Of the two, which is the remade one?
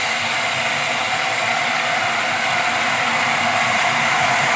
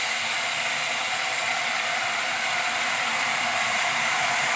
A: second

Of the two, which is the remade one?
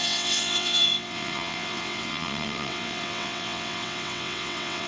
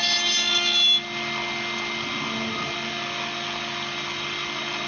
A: first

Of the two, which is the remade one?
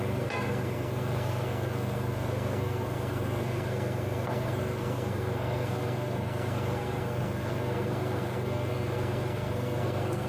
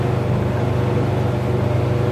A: first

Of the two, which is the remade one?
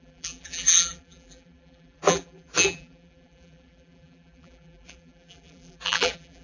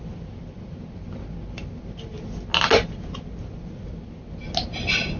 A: first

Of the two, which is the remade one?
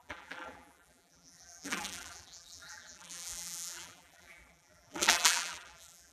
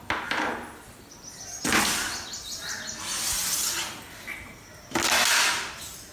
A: first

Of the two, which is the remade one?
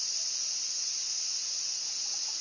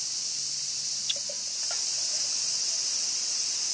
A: first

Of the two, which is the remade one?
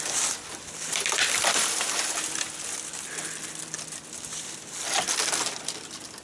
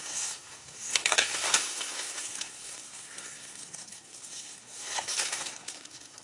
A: second